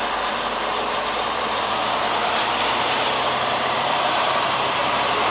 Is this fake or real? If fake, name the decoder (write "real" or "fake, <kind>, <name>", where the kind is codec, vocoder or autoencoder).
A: fake, vocoder, BigVGAN v2